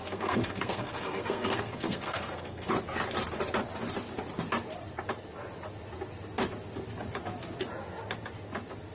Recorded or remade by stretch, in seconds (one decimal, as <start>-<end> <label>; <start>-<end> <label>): 0.0-2.7 remade; 2.7-8.9 recorded